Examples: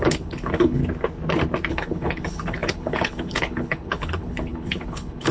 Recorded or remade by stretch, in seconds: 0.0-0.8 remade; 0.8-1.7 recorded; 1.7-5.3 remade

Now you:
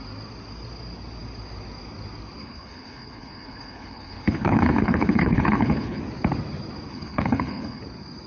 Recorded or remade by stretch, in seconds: 0.0-2.4 recorded; 2.4-6.0 remade; 6.0-6.9 recorded; 6.9-7.8 remade; 7.8-8.3 recorded

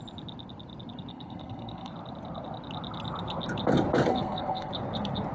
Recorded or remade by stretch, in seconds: 0.0-1.1 recorded; 1.1-1.9 remade; 1.9-4.1 recorded; 4.1-4.7 remade; 4.7-5.3 recorded